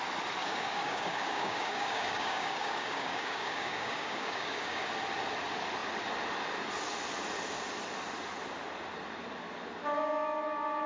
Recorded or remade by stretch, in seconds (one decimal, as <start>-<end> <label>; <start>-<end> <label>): 0.0-0.4 recorded; 0.4-4.9 remade; 4.9-10.9 recorded